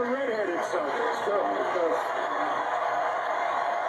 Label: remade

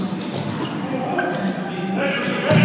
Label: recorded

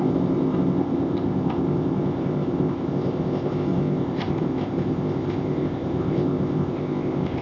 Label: remade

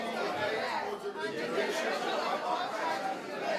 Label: recorded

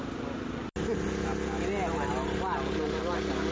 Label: recorded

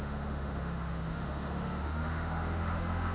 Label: remade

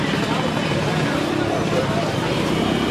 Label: remade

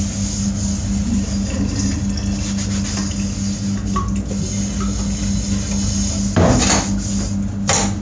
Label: recorded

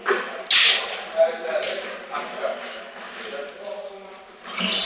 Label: recorded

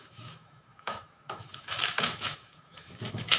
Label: remade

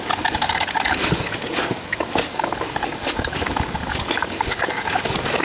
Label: remade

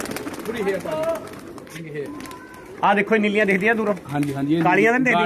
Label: recorded